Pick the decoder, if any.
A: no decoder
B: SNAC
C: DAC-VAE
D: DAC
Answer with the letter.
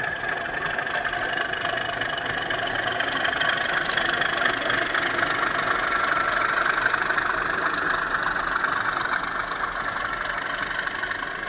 A